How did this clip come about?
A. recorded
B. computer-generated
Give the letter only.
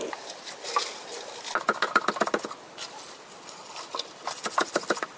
A